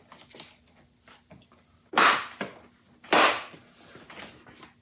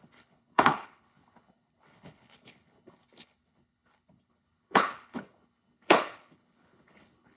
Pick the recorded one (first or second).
first